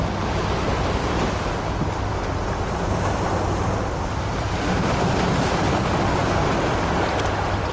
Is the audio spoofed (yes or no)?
no